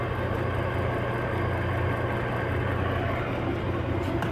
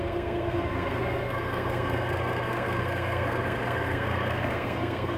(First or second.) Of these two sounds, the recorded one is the first